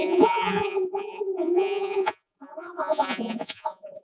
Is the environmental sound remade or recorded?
remade